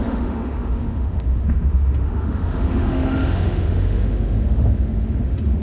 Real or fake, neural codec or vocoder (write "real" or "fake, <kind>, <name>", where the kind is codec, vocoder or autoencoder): fake, autoencoder, DAC-VAE